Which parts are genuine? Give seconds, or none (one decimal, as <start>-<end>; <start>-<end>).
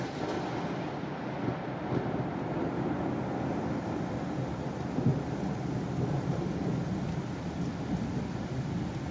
0.0-9.1